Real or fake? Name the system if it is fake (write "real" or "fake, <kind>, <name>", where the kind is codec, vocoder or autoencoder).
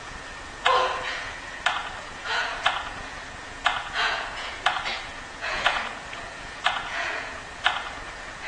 fake, vocoder, Vocos